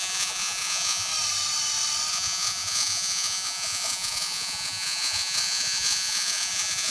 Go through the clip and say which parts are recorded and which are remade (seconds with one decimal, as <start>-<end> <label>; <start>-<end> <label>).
0.0-1.1 remade; 1.1-2.1 recorded; 2.1-6.9 remade